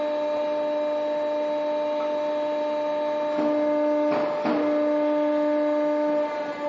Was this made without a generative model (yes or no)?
yes